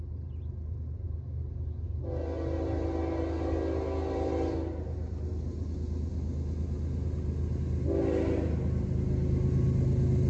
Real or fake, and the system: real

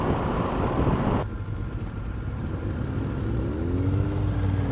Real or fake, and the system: real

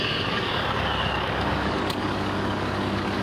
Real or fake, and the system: fake, codec, DAC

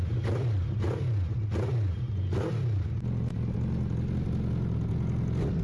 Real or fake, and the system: real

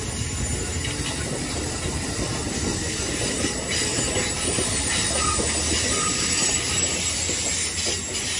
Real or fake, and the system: real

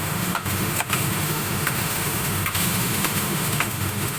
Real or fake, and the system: fake, autoencoder, DAC-VAE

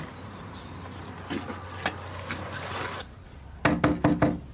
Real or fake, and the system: real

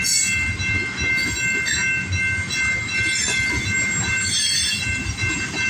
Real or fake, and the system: real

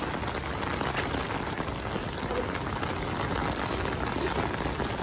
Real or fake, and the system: real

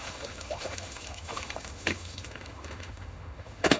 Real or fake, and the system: fake, autoencoder, DAC-VAE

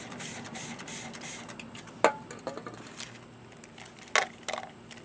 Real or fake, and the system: real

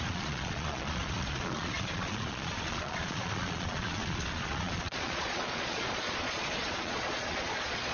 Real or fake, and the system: fake, vocoder, Vocos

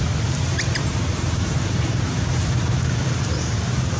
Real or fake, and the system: fake, vocoder, BigVGAN v2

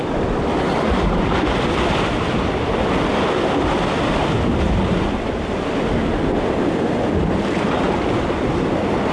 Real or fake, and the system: real